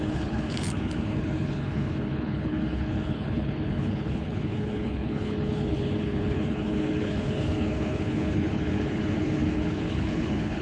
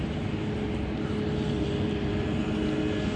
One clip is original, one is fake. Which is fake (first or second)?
first